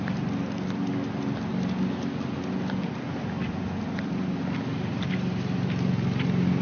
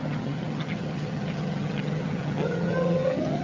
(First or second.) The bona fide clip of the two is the first